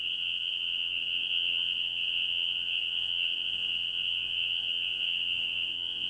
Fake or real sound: fake